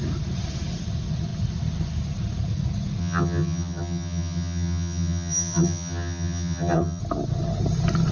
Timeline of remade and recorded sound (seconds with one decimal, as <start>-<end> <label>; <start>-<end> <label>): 0.0-3.0 recorded; 3.0-7.0 remade; 7.0-8.1 recorded